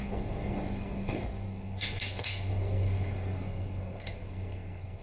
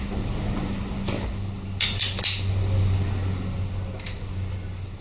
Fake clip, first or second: first